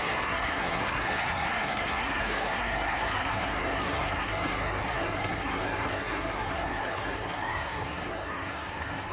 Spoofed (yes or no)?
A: yes